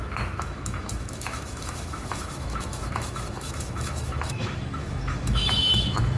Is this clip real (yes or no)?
no